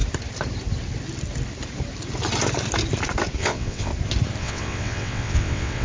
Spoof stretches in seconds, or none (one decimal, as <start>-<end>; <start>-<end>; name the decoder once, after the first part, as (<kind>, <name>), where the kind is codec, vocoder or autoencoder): 3.4-3.9 (vocoder, WaveNeXt); 4.4-5.8

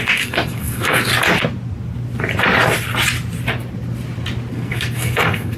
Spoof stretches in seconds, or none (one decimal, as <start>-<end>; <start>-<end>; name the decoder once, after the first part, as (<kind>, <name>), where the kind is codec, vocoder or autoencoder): 0.0-1.1 (codec, SNAC); 4.5-5.6

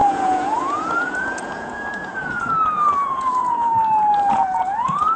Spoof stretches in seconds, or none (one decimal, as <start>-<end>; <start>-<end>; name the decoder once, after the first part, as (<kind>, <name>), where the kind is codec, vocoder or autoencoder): 0.0-3.7 (vocoder, Vocos); 4.3-5.2

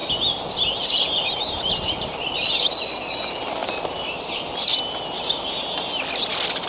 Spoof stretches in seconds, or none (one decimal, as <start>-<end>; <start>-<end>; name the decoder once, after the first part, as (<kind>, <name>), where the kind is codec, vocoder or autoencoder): none

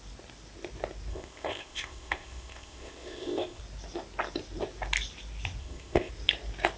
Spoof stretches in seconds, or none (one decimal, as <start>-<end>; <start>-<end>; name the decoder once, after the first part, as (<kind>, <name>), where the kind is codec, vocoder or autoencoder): 1.1-3.6 (codec, ZipCodec); 5.6-6.1

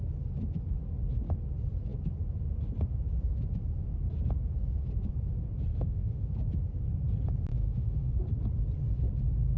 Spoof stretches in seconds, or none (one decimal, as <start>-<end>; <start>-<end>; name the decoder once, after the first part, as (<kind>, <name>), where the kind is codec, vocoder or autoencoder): 5.7-6.3 (autoencoder, DAC-VAE); 7.5-8.2